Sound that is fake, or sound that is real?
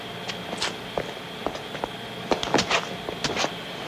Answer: real